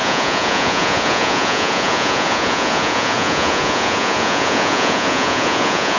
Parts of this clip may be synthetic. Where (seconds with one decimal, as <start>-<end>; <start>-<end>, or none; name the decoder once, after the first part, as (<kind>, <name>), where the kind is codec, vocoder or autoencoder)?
0.0-6.0 (vocoder, Vocos)